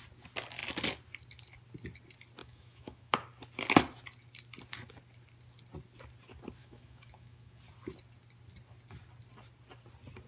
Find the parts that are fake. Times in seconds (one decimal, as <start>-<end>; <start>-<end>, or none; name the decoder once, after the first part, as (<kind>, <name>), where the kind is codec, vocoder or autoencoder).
2.4-3.1 (autoencoder, DAC-VAE); 6.6-7.6